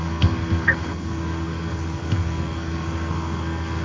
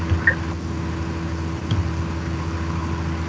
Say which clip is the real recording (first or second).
second